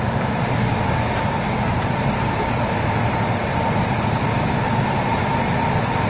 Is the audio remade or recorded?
recorded